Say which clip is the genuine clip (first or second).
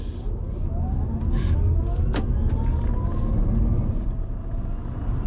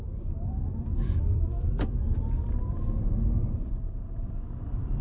first